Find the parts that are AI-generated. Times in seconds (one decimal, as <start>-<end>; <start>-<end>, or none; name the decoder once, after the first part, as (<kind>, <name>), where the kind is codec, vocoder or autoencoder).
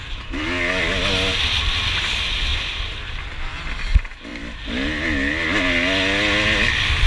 2.5-3.2 (vocoder, BigVGAN v2)